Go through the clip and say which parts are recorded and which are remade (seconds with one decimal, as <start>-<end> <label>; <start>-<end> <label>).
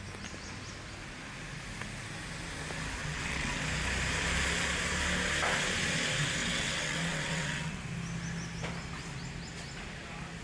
0.0-3.0 recorded; 3.0-3.6 remade; 3.6-6.4 recorded; 6.4-7.8 remade; 7.8-10.4 recorded